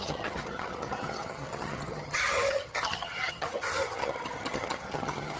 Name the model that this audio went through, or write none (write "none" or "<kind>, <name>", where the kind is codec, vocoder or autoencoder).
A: vocoder, HiFi-GAN